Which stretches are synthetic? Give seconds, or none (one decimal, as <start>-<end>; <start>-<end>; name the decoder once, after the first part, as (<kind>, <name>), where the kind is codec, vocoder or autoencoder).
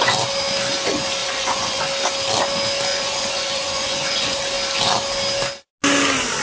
1.2-1.8 (vocoder, Vocos); 2.9-4.4